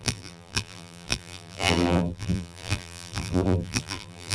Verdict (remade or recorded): remade